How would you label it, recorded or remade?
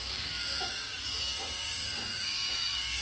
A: remade